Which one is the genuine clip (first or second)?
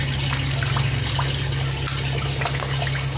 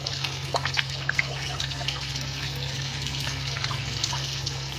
first